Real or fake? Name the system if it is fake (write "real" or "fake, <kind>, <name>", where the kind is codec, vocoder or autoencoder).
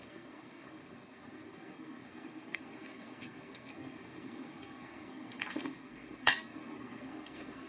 fake, codec, SNAC